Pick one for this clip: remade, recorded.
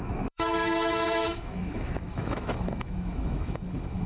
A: remade